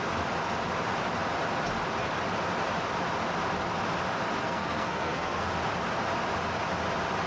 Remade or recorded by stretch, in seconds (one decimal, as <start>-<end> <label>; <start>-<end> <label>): 0.0-4.4 recorded; 4.4-5.5 remade; 5.5-7.3 recorded